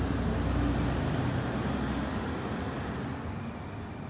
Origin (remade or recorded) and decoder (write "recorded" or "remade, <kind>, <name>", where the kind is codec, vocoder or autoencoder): recorded